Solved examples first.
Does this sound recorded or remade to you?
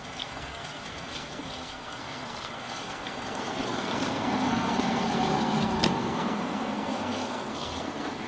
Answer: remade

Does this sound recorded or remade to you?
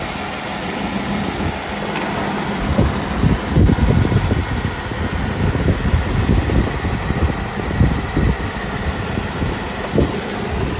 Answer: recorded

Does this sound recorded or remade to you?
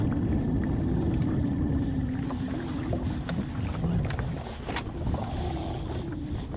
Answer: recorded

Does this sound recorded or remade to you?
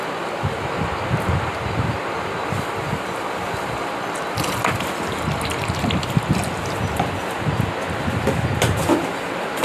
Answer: recorded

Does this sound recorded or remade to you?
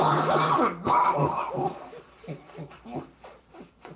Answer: recorded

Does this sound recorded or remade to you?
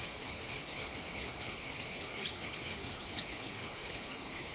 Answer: remade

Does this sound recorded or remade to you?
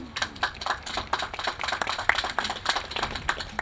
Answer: recorded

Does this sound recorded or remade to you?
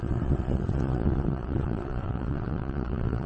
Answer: remade